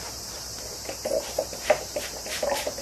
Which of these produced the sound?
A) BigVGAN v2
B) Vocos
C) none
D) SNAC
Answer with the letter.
A